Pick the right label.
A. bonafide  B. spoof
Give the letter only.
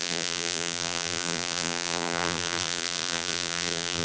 B